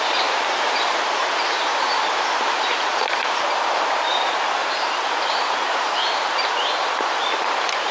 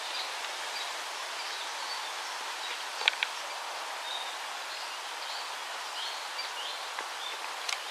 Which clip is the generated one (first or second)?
first